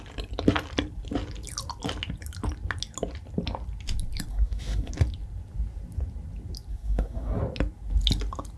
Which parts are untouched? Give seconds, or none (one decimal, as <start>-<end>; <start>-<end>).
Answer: 0.0-4.3; 4.9-6.7; 7.4-8.6